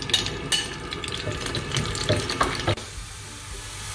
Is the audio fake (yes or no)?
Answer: no